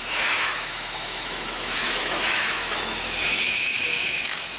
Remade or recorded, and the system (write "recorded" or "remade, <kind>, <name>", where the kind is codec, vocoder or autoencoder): remade, autoencoder, DAC-VAE